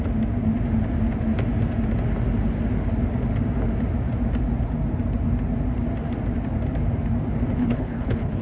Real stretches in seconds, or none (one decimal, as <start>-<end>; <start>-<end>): 0.0-7.6